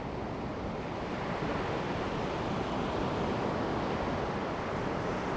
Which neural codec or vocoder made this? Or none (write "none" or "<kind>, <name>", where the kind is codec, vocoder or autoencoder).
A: none